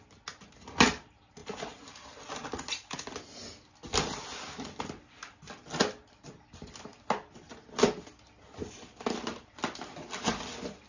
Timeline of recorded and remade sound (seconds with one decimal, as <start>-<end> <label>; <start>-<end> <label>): 0.0-10.9 recorded